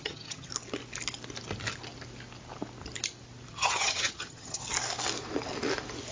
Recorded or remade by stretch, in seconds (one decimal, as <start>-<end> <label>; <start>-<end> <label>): 0.0-0.5 remade; 0.5-3.5 recorded; 3.5-4.6 remade; 4.6-6.1 recorded